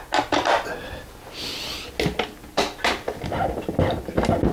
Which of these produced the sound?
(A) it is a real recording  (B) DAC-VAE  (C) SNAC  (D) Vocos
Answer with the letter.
A